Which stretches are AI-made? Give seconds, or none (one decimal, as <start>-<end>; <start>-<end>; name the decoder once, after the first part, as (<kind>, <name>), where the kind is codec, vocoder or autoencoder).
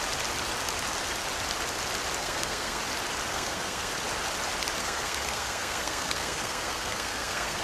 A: 2.2-2.8 (codec, SNAC); 3.3-3.9; 4.8-7.6